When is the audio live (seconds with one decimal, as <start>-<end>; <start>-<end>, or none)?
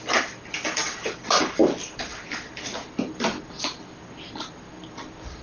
0.0-5.4